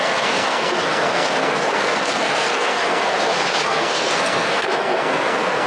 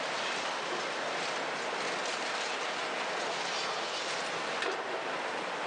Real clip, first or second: second